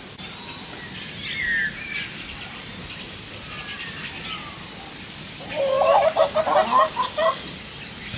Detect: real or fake real